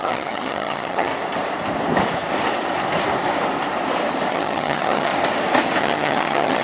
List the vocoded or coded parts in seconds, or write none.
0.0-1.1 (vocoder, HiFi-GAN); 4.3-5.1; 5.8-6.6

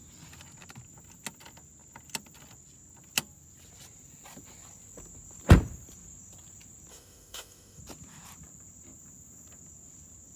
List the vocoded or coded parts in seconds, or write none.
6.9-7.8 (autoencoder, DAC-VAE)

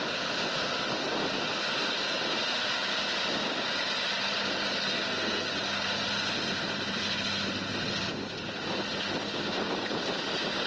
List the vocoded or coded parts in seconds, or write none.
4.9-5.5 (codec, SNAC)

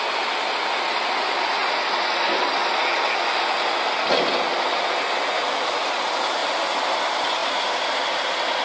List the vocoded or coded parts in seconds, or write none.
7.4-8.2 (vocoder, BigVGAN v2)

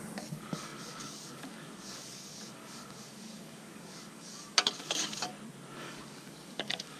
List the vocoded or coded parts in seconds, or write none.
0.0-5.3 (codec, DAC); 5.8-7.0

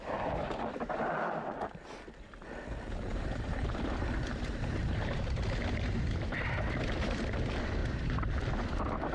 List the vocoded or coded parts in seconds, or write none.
3.1-7.2 (vocoder, BigVGAN v2); 7.8-8.5